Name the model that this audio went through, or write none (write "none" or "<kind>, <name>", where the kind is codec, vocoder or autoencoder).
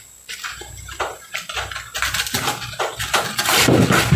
none